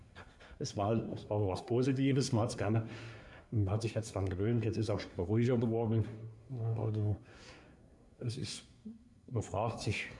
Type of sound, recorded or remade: remade